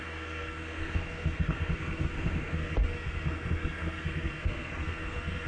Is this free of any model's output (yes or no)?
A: no